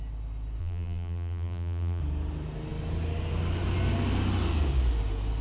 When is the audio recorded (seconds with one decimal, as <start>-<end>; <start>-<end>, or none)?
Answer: 0.0-0.6; 2.0-5.4